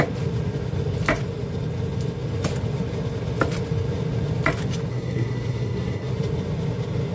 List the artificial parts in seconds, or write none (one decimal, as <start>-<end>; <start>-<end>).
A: 4.9-6.1